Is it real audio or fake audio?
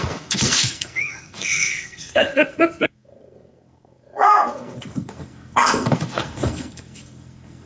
fake